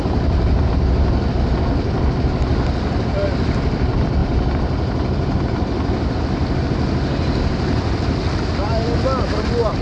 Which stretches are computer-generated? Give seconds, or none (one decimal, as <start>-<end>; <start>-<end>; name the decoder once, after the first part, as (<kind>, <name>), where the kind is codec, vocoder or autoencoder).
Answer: none